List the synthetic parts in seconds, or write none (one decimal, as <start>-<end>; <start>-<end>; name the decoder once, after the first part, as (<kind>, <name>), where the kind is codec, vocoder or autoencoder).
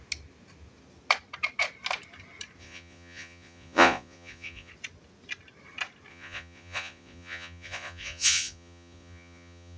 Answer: 2.6-4.7 (vocoder, Vocos); 6.1-9.8